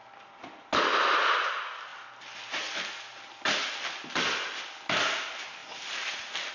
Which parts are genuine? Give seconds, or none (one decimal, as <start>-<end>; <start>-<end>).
0.0-6.5